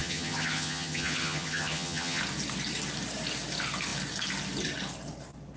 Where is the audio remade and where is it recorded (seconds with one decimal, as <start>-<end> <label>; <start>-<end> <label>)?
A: 0.0-2.2 remade; 2.2-5.6 recorded